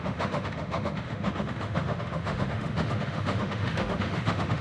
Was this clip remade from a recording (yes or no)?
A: yes